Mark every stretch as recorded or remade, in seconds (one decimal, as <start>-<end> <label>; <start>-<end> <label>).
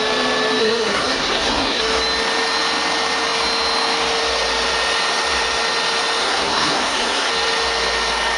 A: 0.0-0.6 recorded; 0.6-1.8 remade; 1.8-6.2 recorded; 6.2-7.3 remade; 7.3-8.4 recorded